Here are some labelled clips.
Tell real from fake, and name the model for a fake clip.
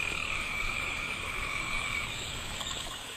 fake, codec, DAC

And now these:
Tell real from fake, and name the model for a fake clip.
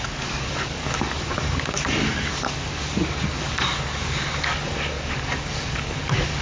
fake, codec, DAC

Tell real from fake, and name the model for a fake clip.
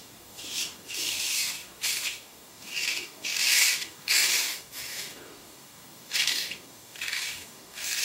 fake, codec, DAC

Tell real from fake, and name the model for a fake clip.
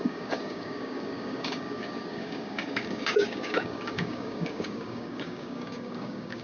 fake, codec, DAC